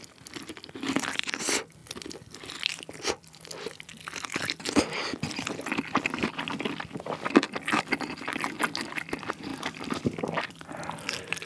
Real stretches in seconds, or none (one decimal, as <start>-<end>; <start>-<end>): 0.0-11.5